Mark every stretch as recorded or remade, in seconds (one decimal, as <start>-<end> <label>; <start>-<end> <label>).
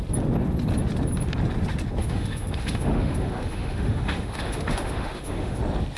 0.0-2.0 recorded; 2.0-5.6 remade; 5.6-6.0 recorded